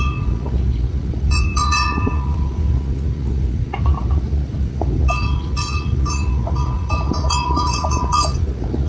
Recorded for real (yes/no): no